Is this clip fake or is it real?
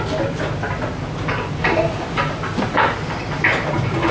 real